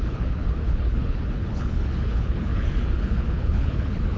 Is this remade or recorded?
remade